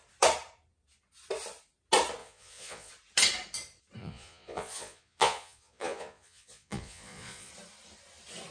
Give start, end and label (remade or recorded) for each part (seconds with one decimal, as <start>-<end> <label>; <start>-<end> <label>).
0.0-2.2 recorded; 2.2-2.9 remade; 2.9-4.0 recorded; 4.0-7.5 remade; 7.5-8.5 recorded